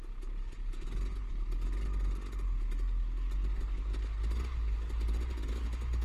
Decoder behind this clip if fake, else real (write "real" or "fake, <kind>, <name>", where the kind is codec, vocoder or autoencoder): real